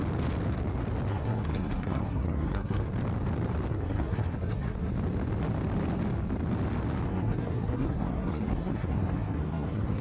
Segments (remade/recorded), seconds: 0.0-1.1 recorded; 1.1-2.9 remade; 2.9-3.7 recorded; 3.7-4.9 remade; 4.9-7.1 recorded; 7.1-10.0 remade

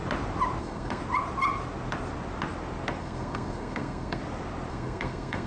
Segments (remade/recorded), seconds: 0.0-0.6 recorded; 0.6-1.0 remade; 1.0-3.0 recorded; 3.0-4.2 remade; 4.2-4.7 recorded; 4.7-5.5 remade